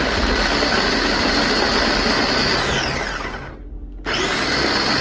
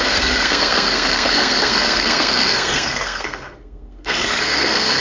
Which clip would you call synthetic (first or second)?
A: second